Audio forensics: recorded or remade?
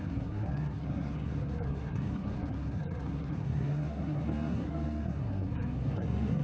remade